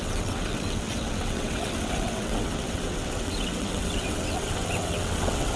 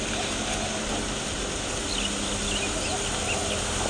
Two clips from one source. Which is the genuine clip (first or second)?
second